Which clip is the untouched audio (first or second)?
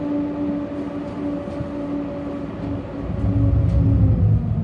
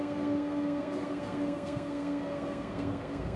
first